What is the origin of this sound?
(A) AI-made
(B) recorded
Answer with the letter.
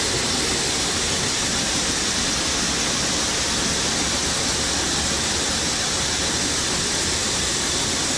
B